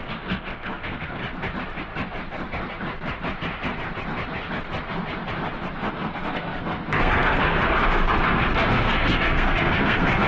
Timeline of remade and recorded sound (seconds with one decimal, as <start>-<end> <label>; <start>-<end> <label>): 0.0-1.2 remade; 1.2-5.9 recorded; 5.9-10.3 remade